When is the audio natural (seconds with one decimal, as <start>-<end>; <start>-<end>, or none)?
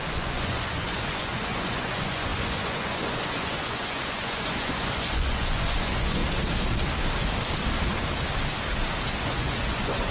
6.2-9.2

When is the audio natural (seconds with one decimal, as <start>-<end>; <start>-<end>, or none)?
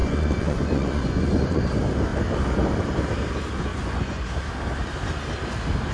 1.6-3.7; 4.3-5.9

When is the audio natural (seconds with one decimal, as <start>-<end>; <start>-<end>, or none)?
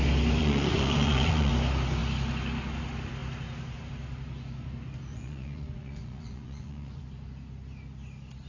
0.0-0.4; 1.5-5.1; 7.0-8.5